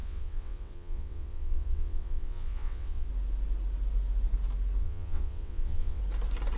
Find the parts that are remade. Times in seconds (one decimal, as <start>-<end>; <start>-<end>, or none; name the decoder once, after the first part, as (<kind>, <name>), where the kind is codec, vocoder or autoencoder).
0.0-3.1 (vocoder, WaveNeXt); 4.8-6.0